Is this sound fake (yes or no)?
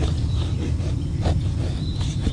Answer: no